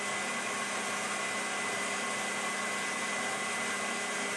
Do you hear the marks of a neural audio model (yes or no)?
no